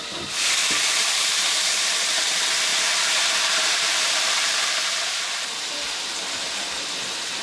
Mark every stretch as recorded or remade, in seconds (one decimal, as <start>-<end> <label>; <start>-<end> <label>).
0.0-0.6 recorded; 0.6-1.9 remade; 1.9-2.7 recorded; 2.7-7.4 remade